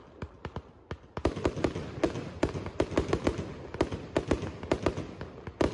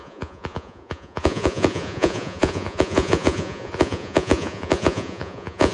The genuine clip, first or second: first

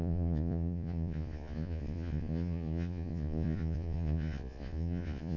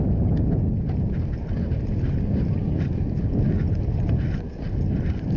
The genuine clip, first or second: second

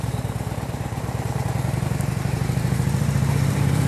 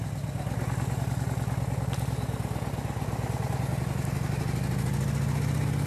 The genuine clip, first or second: second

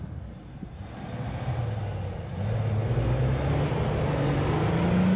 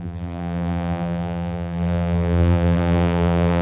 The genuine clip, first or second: first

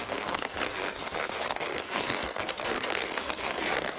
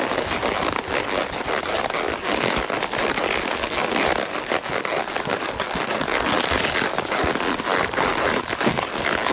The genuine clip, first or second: second